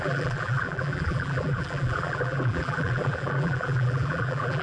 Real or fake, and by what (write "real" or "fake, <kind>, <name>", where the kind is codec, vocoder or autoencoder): fake, vocoder, BigVGAN v2